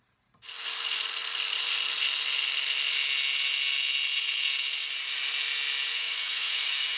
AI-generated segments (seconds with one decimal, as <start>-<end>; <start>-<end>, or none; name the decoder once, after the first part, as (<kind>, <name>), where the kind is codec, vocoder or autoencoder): 5.9-7.0 (autoencoder, DAC-VAE)